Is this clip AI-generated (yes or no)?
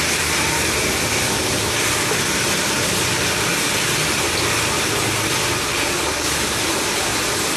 no